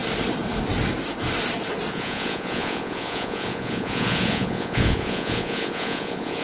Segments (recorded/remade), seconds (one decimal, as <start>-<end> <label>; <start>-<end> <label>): 0.0-1.9 recorded; 1.9-6.4 remade